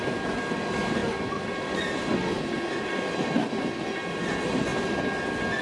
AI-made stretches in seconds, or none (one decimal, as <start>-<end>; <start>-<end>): none